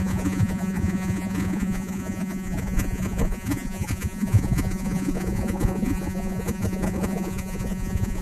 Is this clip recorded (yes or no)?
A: no